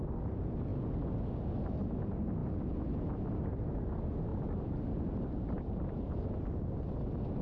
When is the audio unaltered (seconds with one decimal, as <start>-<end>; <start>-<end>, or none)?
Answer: 0.0-4.3; 6.3-7.4